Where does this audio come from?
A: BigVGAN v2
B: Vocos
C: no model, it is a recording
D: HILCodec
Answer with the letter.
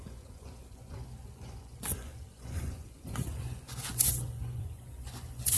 B